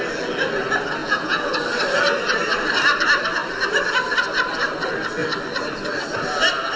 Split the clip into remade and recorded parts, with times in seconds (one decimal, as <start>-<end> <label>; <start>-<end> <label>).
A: 0.0-1.0 recorded; 1.0-1.5 remade; 1.5-6.8 recorded